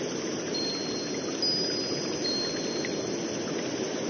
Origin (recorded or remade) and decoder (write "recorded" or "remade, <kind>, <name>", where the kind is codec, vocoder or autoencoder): recorded